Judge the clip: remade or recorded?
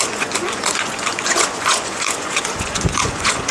remade